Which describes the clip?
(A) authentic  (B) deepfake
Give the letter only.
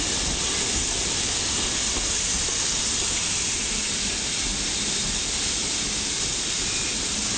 A